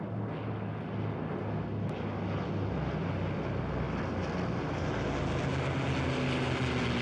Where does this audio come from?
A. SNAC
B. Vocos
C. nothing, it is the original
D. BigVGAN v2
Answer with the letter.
C